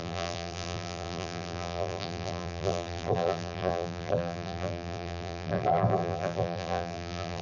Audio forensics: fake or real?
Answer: fake